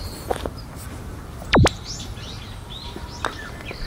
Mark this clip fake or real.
fake